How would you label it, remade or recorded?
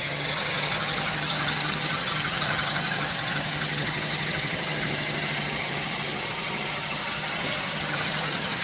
remade